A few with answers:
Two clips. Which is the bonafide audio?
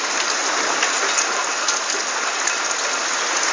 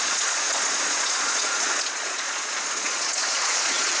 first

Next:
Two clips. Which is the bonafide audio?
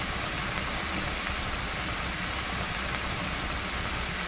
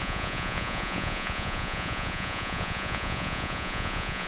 first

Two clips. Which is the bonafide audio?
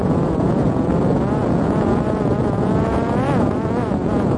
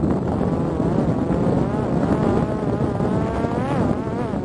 second